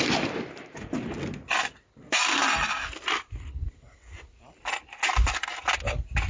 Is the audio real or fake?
real